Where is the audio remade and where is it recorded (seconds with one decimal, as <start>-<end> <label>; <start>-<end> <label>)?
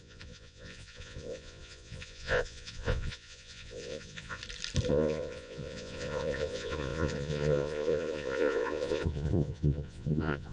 0.0-4.4 remade; 4.4-4.9 recorded; 4.9-10.5 remade